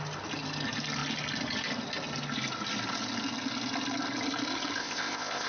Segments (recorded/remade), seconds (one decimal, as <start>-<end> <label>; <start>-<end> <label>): 0.0-4.8 recorded; 4.8-5.5 remade